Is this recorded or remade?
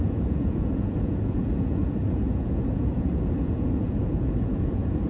remade